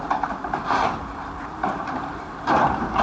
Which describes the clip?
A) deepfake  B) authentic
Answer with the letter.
A